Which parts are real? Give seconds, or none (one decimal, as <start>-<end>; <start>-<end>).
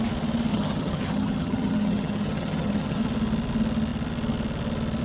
0.0-0.5; 3.0-5.0